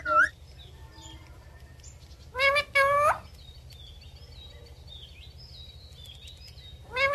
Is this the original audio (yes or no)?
yes